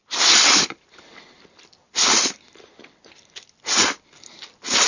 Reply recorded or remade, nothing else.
recorded